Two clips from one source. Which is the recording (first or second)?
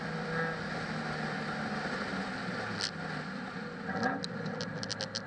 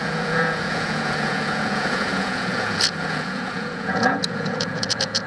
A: first